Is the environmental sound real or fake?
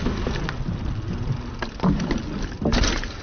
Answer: real